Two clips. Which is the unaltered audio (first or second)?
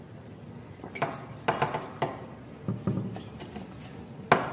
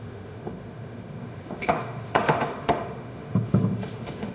first